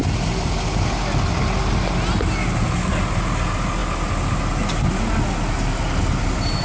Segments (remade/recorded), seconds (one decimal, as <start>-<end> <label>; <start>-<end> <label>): 0.0-6.6 recorded